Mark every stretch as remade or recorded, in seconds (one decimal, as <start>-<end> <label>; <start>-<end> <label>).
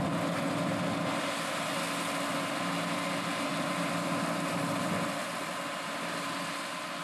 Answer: 0.0-7.0 recorded